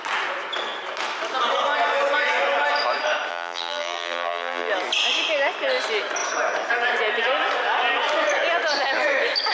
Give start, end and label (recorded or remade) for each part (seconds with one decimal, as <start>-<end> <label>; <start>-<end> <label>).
0.0-3.3 recorded; 3.3-4.7 remade; 4.7-9.5 recorded